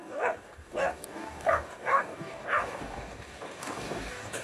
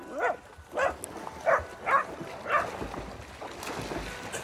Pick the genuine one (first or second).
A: second